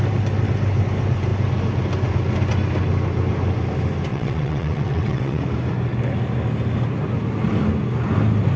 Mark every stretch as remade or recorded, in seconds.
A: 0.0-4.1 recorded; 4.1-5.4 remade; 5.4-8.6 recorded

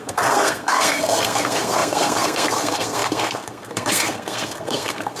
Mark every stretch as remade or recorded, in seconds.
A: 0.0-5.2 remade

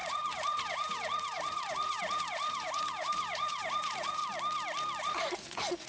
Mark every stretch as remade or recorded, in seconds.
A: 0.0-4.2 remade; 4.2-5.0 recorded; 5.0-5.9 remade